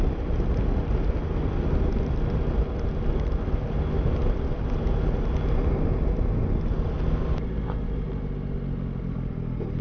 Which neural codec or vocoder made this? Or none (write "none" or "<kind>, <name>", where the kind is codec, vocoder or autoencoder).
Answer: none